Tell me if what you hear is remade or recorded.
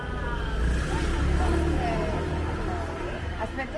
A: recorded